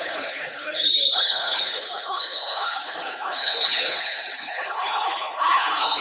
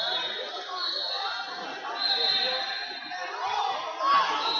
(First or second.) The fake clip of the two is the first